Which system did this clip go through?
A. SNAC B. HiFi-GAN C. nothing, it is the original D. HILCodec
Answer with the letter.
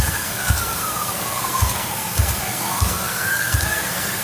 A